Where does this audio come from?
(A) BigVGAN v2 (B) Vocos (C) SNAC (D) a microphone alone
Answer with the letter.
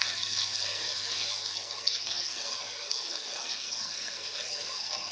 C